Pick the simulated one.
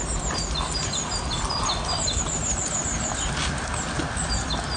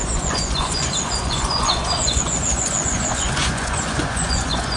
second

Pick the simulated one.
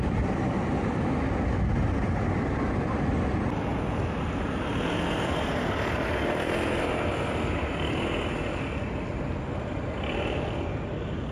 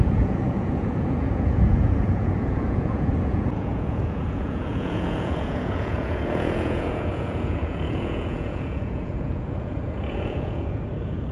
second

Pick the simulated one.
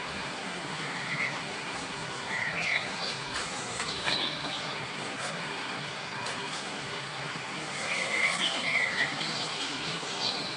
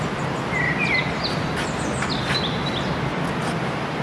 first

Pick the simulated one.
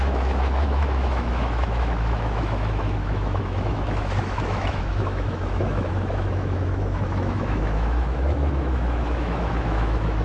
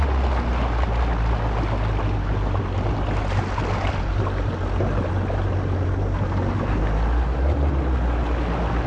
first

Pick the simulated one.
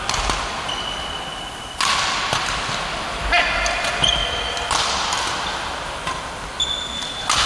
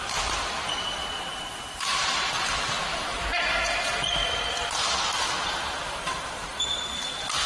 second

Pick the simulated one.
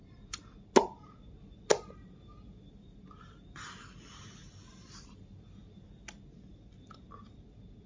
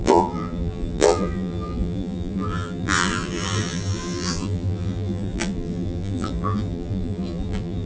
second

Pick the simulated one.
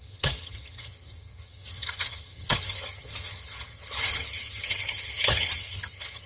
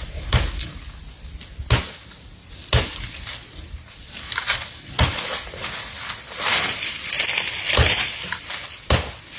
first